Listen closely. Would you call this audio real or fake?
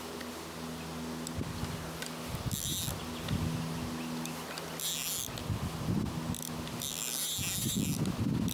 real